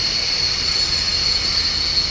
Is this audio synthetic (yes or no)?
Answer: no